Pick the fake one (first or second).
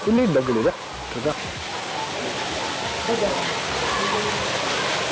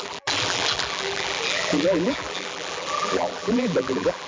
second